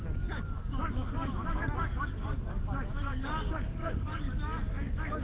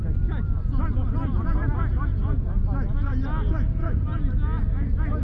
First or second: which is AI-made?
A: first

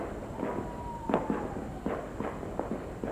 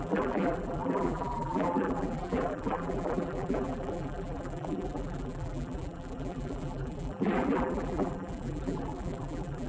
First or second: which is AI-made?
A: second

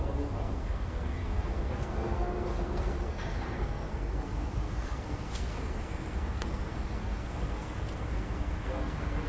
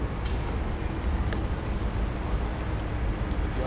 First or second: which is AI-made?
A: first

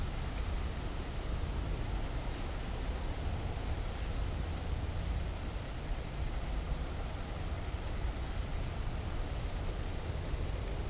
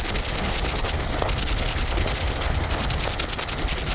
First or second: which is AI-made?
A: second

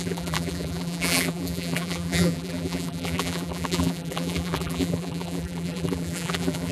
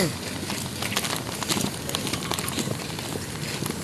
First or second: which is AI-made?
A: first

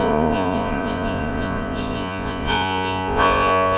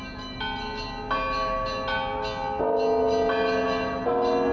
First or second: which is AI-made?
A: first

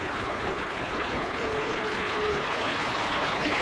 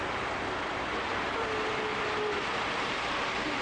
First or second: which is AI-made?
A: first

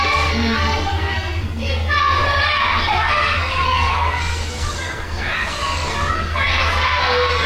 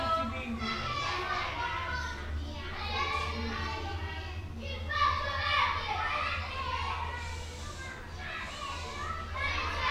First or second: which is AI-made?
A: first